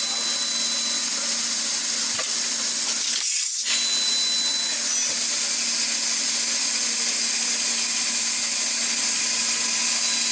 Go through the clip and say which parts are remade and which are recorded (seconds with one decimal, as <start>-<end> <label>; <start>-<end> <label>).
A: 0.0-10.3 recorded